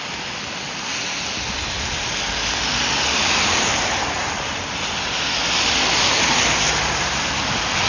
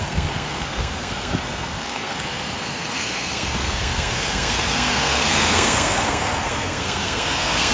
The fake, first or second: second